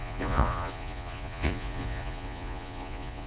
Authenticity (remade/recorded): remade